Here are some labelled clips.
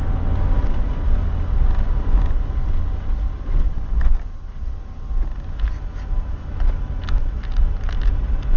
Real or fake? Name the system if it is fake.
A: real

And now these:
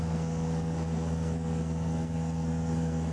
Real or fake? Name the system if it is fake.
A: fake, codec, SNAC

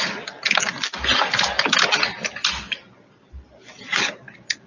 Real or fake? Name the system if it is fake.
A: real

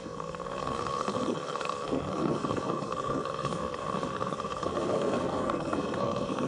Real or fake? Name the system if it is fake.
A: fake, codec, SNAC